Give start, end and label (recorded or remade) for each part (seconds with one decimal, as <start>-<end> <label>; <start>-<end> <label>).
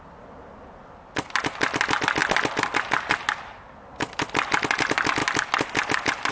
0.0-6.3 recorded